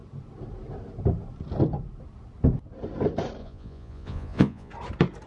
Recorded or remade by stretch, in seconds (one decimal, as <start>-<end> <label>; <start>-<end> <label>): 0.0-3.4 recorded; 3.4-4.7 remade; 4.7-5.3 recorded